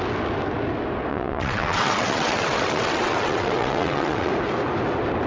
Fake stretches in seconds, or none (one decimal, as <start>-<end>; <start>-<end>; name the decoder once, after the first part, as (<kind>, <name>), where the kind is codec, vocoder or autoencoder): 1.1-4.3 (vocoder, WaveNeXt)